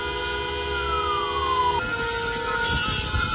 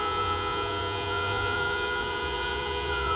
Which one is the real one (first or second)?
first